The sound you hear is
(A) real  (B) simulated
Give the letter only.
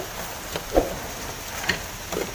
A